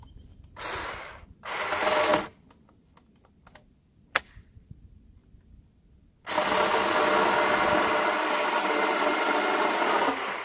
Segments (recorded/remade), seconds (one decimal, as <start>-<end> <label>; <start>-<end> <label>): 0.0-10.4 recorded